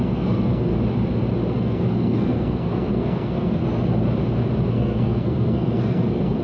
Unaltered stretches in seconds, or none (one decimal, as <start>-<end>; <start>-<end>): 0.7-1.5; 3.6-4.7